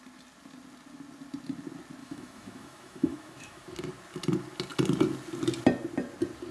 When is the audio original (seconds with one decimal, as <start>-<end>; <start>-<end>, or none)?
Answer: 0.0-2.0; 3.7-6.5